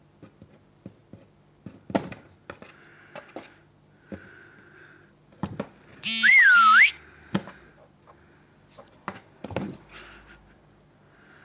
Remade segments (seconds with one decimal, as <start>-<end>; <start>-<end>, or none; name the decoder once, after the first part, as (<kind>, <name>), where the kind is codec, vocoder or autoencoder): none